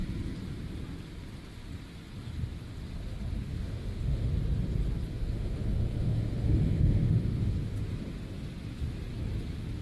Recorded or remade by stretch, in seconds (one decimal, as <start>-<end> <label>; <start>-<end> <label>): 0.0-3.5 recorded; 3.5-4.3 remade; 4.3-5.1 recorded; 5.1-7.9 remade; 7.9-9.8 recorded

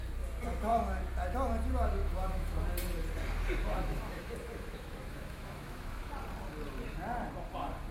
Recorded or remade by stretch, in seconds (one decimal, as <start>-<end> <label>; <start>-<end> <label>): 0.0-2.0 recorded; 2.0-2.6 remade; 2.6-3.7 recorded; 3.7-6.1 remade; 6.1-7.9 recorded

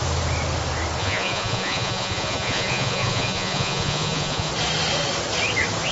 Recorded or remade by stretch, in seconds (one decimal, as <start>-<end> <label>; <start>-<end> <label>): 0.0-1.0 recorded; 1.0-4.5 remade; 4.5-5.9 recorded

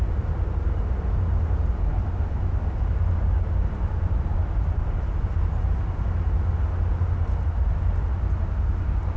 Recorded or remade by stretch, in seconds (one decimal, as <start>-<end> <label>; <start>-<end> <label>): 0.0-9.2 recorded

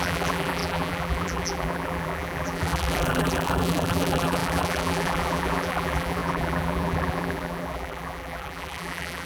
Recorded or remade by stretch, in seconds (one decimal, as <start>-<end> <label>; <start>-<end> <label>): 0.0-9.3 remade

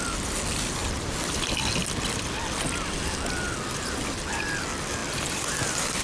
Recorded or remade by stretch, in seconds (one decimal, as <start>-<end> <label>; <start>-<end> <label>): 0.0-6.0 recorded